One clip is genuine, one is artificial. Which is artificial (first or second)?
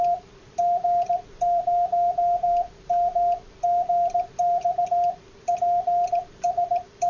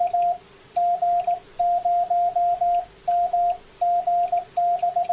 first